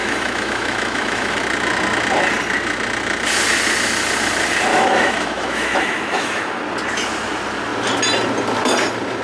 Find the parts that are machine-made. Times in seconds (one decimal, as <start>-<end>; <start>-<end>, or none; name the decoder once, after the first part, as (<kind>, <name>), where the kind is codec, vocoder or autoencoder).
0.0-1.3 (autoencoder, DAC-VAE); 4.7-6.6